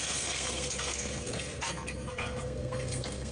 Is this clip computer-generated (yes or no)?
yes